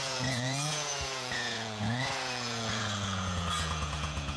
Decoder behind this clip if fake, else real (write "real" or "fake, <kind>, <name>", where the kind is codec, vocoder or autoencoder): fake, vocoder, Vocos